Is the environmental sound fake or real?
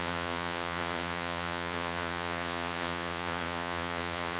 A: fake